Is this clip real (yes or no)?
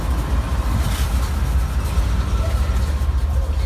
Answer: yes